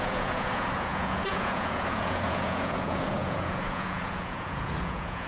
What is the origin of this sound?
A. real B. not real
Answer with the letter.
B